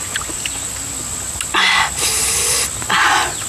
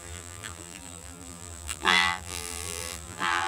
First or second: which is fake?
second